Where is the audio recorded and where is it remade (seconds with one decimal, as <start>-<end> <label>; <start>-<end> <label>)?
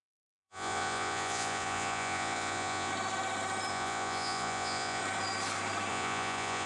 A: 0.0-2.9 remade; 2.9-3.7 recorded; 3.7-5.0 remade; 5.0-5.9 recorded; 5.9-6.7 remade